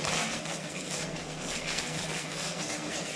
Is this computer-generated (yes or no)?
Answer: yes